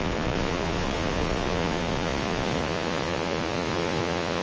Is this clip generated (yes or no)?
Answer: yes